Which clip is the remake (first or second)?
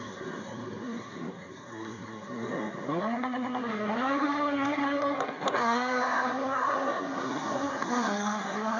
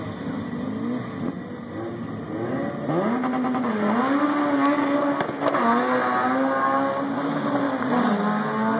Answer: first